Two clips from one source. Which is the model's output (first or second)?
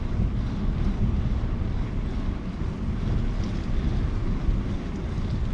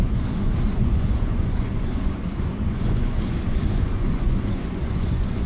second